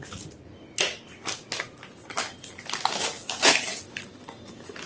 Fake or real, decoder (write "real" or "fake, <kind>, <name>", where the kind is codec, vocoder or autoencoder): real